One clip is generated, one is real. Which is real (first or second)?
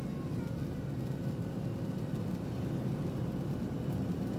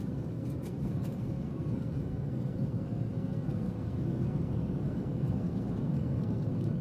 first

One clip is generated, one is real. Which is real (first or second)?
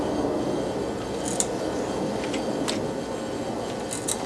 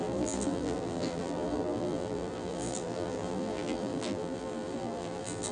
first